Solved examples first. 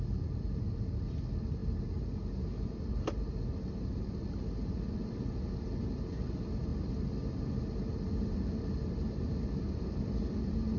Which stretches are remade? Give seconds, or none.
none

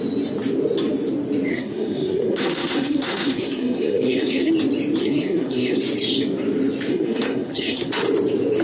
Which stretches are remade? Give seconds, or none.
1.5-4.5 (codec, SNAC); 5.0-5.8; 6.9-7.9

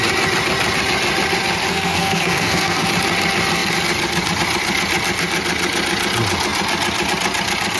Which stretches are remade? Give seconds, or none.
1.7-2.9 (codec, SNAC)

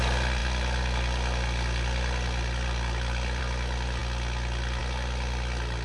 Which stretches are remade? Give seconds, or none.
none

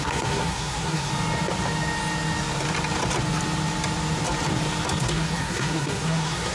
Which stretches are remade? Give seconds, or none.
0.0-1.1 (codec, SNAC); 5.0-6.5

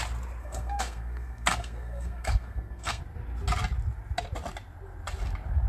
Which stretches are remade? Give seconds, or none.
0.4-3.0 (codec, SNAC)